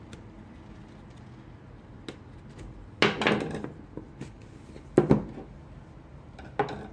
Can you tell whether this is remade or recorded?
recorded